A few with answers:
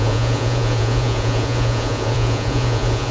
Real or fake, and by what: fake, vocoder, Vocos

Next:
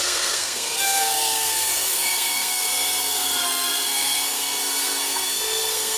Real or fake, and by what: fake, codec, SNAC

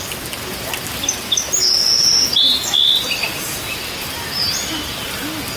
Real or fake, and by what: real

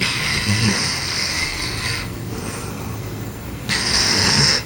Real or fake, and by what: fake, codec, SNAC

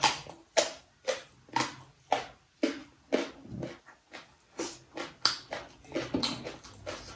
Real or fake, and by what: real